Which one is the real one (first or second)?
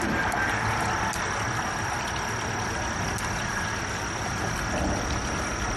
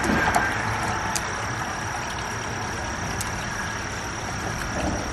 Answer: first